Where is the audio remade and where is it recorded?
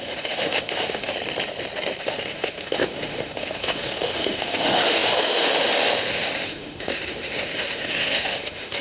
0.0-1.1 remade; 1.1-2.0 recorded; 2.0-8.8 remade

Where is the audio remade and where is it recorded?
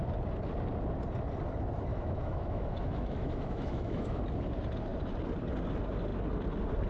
0.0-1.9 recorded; 1.9-4.2 remade; 4.2-6.9 recorded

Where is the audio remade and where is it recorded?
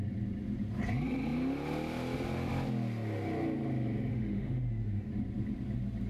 0.0-4.1 recorded; 4.1-5.1 remade; 5.1-6.1 recorded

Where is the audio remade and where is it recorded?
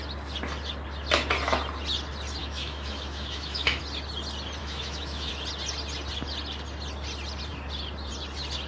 0.0-2.4 recorded; 2.4-3.8 remade; 3.8-4.6 recorded; 4.6-5.3 remade; 5.3-8.7 recorded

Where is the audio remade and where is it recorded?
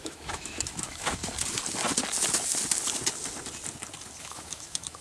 0.0-1.2 remade; 1.2-4.2 recorded; 4.2-5.0 remade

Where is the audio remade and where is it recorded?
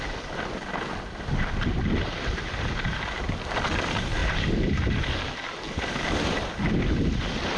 0.0-7.6 recorded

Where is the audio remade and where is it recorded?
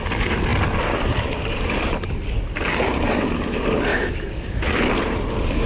0.0-3.9 recorded; 3.9-4.9 remade; 4.9-5.7 recorded